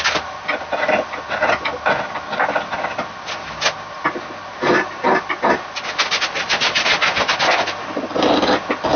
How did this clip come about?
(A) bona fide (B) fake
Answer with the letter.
A